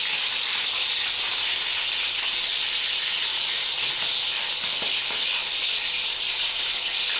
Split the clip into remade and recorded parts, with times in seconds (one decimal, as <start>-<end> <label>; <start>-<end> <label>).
0.0-3.3 recorded; 3.3-3.9 remade; 3.9-7.2 recorded